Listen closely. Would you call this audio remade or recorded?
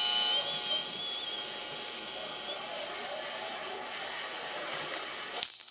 recorded